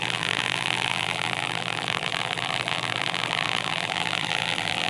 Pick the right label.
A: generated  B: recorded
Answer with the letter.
A